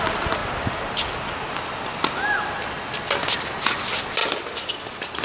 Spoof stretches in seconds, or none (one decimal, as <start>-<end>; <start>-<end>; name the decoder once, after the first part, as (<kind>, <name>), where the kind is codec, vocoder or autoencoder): none